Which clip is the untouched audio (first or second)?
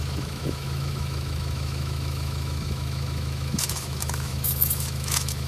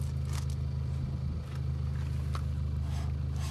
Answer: second